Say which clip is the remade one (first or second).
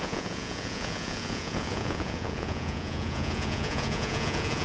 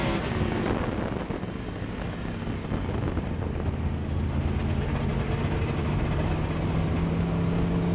first